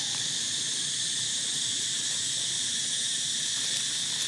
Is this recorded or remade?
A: recorded